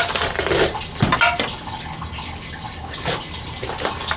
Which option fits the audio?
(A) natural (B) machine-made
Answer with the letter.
A